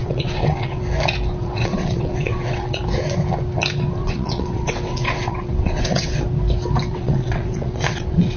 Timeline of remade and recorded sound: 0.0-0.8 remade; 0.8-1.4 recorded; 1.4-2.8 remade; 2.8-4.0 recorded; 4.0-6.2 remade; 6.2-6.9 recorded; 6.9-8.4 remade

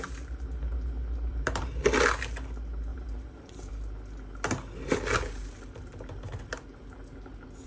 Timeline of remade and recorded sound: 0.0-1.3 recorded; 1.3-1.8 remade; 1.8-2.9 recorded; 2.9-3.7 remade; 3.7-7.7 recorded

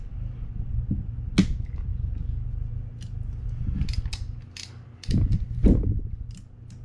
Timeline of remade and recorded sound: 0.0-6.8 recorded

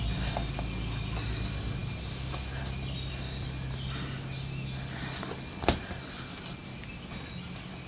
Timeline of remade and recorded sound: 0.0-7.9 recorded